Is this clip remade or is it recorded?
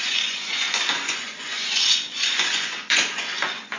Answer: remade